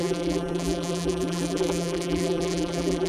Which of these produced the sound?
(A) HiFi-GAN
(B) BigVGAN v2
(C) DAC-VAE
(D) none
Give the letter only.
B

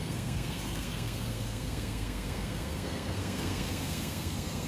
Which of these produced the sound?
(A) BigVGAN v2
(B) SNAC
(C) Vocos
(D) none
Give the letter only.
B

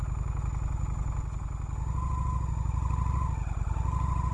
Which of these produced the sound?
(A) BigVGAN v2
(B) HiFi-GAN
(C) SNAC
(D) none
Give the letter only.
D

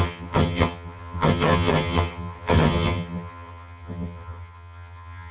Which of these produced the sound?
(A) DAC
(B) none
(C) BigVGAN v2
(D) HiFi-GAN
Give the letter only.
D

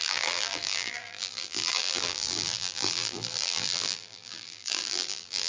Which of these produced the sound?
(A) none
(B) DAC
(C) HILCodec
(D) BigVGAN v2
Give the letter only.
D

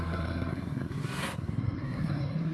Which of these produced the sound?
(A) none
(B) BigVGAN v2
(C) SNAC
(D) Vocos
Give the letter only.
C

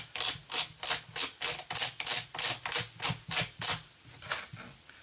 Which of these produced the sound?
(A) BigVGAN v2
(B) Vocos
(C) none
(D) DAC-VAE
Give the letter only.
C